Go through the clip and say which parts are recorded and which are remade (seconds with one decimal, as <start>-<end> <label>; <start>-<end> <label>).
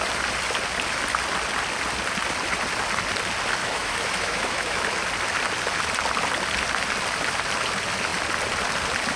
0.0-3.6 recorded; 3.6-4.8 remade; 4.8-9.2 recorded